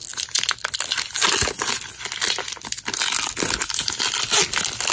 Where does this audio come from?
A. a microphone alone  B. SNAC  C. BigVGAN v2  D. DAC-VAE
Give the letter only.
A